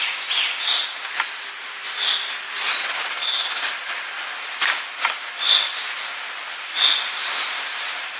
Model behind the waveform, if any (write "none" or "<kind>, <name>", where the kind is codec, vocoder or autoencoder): none